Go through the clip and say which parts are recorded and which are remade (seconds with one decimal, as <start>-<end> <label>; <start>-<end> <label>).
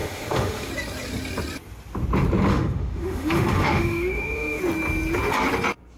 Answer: 0.0-0.7 remade; 0.7-2.5 recorded; 2.5-4.6 remade; 4.6-6.0 recorded